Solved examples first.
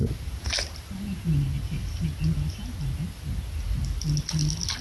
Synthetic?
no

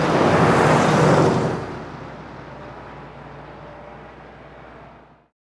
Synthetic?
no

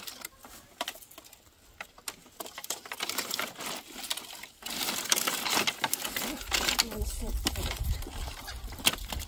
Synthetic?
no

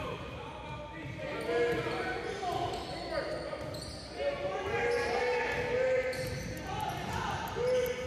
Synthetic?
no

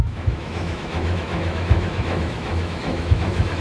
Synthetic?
yes